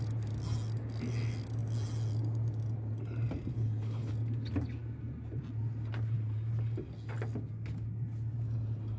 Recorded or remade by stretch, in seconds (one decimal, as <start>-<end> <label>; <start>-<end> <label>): 0.0-3.5 recorded; 3.5-4.1 remade; 4.1-9.0 recorded